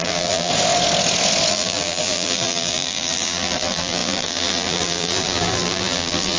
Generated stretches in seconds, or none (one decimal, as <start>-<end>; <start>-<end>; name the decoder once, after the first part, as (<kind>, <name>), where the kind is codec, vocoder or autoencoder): 0.0-0.5 (vocoder, BigVGAN v2); 1.5-6.4